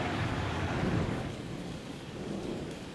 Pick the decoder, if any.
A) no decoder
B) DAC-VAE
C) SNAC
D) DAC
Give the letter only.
D